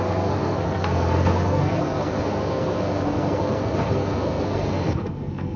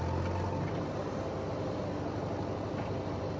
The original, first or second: second